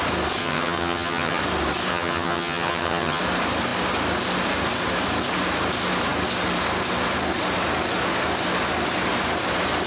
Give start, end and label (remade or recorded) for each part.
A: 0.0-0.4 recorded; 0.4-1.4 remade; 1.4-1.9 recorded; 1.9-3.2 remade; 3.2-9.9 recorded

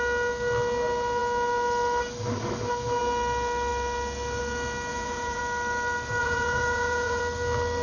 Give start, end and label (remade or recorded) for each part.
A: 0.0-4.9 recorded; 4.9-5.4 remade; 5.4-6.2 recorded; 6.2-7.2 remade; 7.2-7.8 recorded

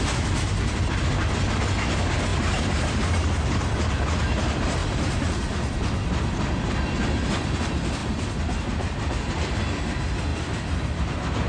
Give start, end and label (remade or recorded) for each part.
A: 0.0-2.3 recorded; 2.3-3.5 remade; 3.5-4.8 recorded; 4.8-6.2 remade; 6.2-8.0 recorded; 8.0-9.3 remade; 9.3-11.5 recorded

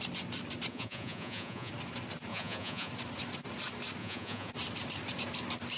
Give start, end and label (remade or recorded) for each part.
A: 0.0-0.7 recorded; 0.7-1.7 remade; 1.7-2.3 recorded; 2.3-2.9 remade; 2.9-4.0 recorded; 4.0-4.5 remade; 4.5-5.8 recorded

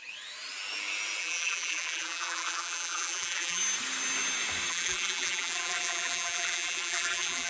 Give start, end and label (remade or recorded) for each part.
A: 0.0-1.2 recorded; 1.2-3.6 remade; 3.6-4.7 recorded; 4.7-7.5 remade

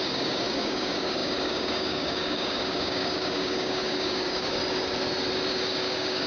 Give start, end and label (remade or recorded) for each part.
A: 0.0-4.6 remade; 4.6-5.5 recorded; 5.5-6.3 remade